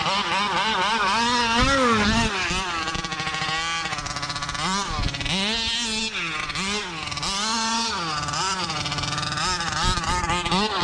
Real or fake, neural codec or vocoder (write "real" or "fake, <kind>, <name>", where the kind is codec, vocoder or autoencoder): real